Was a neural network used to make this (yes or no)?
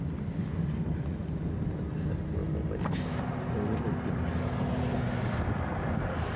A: no